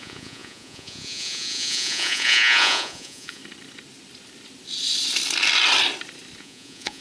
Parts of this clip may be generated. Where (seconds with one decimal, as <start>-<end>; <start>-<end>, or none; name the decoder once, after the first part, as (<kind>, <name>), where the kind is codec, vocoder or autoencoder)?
0.0-3.4 (vocoder, Vocos); 6.4-7.0